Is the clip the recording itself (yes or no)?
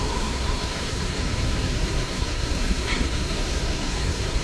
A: no